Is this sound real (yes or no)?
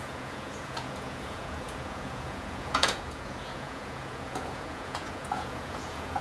no